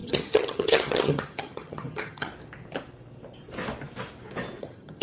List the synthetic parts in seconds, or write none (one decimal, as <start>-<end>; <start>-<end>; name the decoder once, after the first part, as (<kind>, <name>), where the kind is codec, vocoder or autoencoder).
0.0-2.3 (vocoder, HiFi-GAN); 4.6-5.0